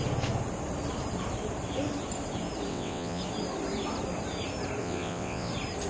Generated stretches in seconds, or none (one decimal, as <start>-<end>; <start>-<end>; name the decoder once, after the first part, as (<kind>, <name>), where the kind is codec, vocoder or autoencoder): 2.7-3.2 (vocoder, WaveNeXt); 4.8-5.5